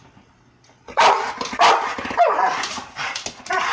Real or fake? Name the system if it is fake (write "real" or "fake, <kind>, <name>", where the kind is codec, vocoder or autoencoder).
real